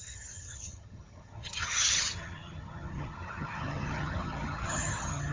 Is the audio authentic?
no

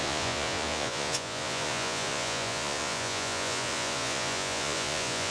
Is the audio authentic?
no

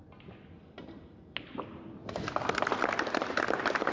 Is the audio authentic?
yes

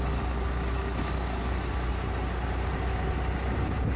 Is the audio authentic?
yes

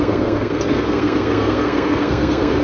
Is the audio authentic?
no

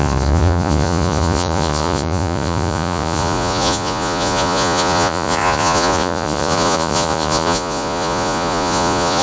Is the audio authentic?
no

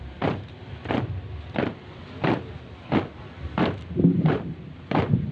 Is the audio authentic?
no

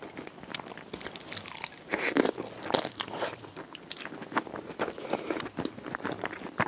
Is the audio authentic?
yes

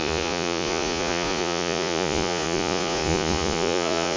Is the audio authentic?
no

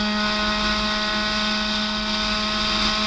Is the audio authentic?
yes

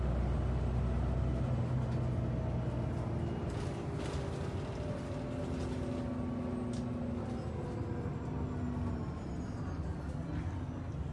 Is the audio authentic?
yes